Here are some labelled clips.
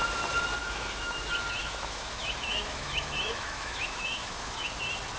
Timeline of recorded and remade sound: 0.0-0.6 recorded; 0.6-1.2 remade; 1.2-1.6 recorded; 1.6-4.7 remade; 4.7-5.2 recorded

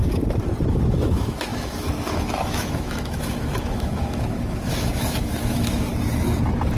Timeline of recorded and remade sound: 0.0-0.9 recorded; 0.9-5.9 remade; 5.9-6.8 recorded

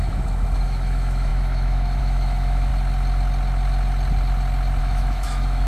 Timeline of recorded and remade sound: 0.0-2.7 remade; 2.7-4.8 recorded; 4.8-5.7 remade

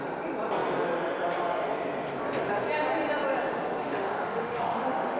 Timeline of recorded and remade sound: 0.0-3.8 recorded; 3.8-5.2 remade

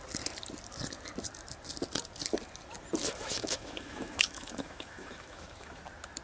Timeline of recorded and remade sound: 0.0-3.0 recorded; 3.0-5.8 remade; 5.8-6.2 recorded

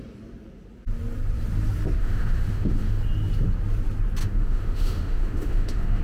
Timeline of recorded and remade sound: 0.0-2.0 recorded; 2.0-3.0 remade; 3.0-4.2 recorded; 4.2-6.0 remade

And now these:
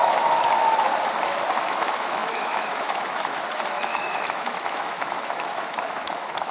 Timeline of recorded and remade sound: 0.0-0.9 remade; 0.9-1.7 recorded; 1.7-6.5 remade

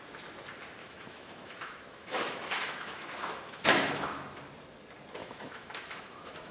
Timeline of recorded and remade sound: 0.0-0.8 recorded; 0.8-4.4 remade; 4.4-5.2 recorded; 5.2-6.5 remade